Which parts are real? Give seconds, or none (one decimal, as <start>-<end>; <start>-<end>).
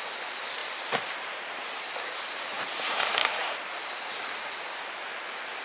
0.0-0.6; 4.0-5.6